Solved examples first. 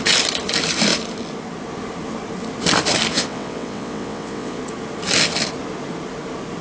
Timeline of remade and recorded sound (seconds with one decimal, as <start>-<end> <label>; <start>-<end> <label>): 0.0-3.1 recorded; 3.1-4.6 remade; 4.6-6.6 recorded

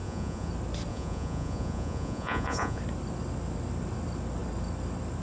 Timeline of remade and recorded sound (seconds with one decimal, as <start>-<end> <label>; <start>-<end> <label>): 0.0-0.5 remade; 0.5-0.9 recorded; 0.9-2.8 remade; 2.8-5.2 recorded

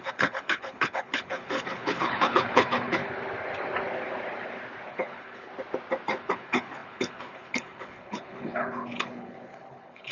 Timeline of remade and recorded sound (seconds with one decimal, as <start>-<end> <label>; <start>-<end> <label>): 0.0-3.0 remade; 3.0-4.9 recorded; 4.9-5.5 remade; 5.5-6.2 recorded; 6.2-10.1 remade

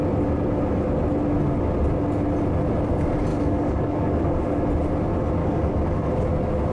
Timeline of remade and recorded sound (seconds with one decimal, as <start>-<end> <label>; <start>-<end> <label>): 0.0-3.3 recorded; 3.3-4.6 remade; 4.6-5.4 recorded; 5.4-6.1 remade; 6.1-6.7 recorded

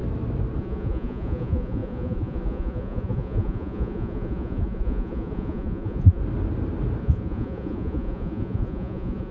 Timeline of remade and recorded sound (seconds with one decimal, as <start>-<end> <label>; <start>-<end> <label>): 0.0-0.6 recorded; 0.6-6.2 remade; 6.2-7.0 recorded; 7.0-9.3 remade